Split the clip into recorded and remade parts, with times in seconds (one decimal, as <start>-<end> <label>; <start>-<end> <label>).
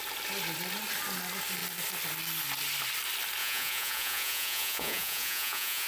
0.0-3.4 recorded; 3.4-5.9 remade